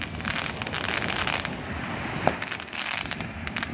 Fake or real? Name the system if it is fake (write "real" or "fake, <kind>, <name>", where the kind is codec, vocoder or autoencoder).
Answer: real